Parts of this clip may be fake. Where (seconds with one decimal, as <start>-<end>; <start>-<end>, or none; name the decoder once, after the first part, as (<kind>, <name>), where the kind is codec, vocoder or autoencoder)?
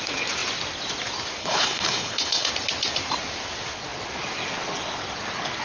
1.4-2.5 (codec, HILCodec)